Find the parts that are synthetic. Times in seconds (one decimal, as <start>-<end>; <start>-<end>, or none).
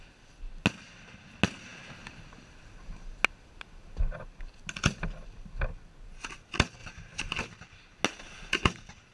none